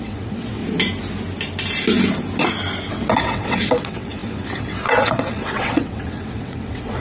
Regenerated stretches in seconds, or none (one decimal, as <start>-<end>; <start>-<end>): 0.0-0.6; 2.9-7.0